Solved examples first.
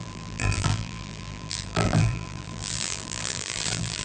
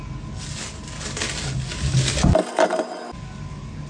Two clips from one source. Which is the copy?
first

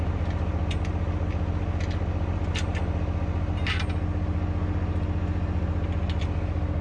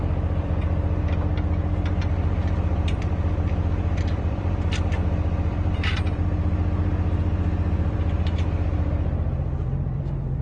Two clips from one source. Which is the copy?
second